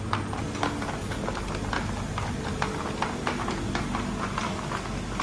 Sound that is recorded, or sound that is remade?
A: recorded